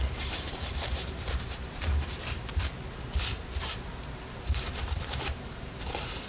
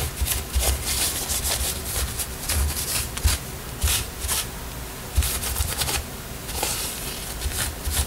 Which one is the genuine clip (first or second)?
second